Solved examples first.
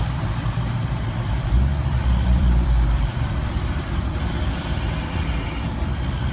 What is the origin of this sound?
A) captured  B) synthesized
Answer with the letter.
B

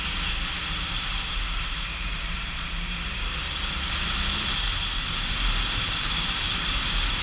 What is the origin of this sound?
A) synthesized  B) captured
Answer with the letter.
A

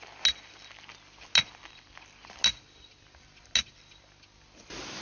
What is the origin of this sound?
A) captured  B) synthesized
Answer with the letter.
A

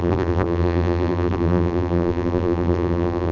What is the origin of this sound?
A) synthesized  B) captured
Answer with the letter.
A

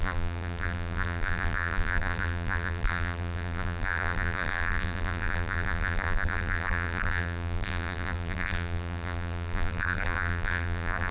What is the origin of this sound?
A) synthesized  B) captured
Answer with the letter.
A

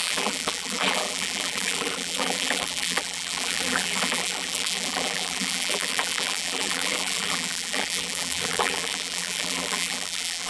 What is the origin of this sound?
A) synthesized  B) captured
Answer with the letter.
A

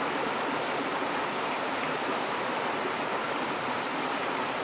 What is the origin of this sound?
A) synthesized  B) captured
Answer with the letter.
B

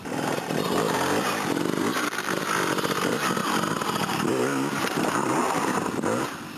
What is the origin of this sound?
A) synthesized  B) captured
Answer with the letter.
B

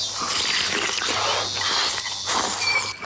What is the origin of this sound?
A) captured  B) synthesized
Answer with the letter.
A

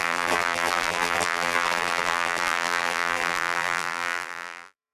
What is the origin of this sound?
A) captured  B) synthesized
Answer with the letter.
B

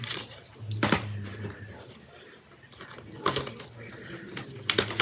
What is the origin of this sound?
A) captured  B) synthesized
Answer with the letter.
A